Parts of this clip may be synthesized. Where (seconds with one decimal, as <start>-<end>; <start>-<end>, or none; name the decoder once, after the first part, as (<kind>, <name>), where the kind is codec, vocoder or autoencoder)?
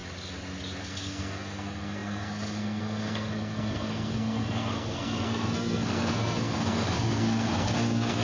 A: 0.8-8.2 (codec, SNAC)